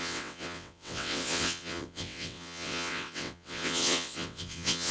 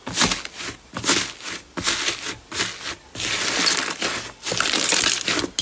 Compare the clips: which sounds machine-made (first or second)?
first